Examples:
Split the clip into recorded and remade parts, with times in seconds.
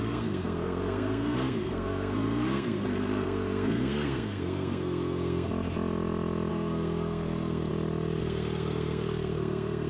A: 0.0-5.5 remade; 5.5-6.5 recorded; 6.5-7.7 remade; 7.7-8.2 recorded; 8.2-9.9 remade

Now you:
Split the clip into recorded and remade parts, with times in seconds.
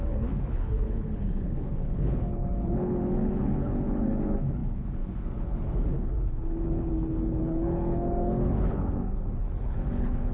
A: 0.0-10.3 remade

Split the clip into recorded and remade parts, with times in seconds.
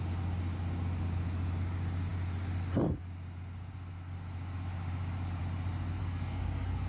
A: 0.0-6.0 recorded; 6.0-6.9 remade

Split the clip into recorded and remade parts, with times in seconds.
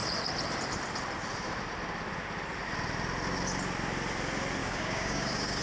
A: 0.0-4.6 recorded; 4.6-5.6 remade